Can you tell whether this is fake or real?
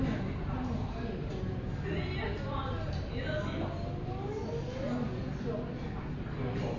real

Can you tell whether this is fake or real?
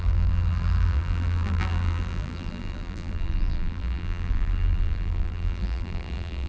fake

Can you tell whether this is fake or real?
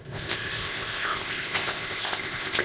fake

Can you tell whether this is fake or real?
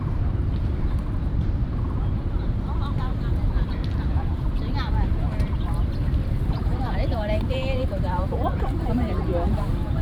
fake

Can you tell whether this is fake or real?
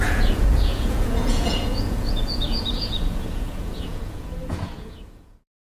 fake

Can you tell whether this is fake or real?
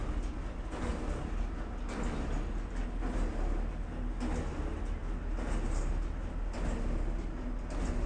real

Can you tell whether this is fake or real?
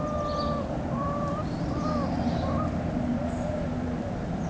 real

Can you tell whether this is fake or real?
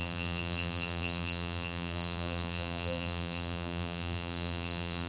fake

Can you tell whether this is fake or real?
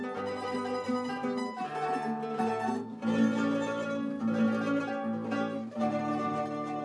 real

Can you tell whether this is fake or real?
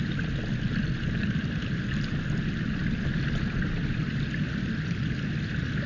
real